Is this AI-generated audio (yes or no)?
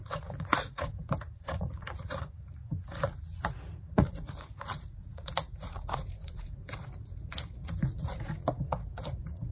yes